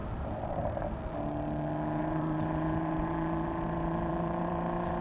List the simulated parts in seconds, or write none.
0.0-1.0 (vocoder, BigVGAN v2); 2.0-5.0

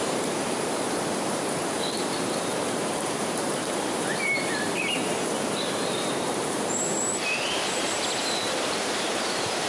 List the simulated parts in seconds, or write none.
0.0-7.1 (vocoder, BigVGAN v2); 8.2-9.7

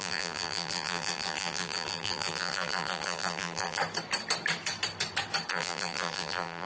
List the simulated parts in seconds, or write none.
0.0-3.8 (vocoder, BigVGAN v2); 5.5-6.7

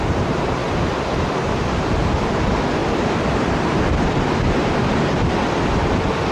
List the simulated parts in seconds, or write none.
2.8-5.3 (vocoder, BigVGAN v2)